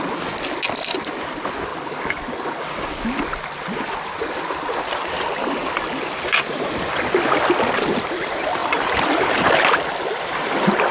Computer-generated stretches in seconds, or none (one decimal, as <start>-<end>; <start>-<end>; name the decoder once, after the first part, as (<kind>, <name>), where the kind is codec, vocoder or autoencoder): 1.7-3.0 (codec, DAC)